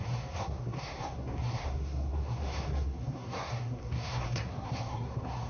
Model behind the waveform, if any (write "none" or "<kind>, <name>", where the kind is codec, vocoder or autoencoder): codec, SNAC